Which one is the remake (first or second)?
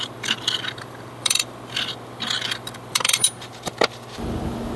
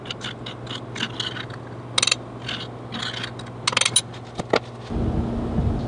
first